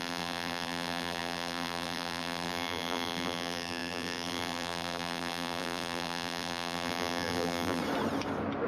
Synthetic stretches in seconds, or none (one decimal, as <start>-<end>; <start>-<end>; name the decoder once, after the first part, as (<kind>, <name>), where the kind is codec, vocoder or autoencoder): 0.0-7.8 (vocoder, BigVGAN v2)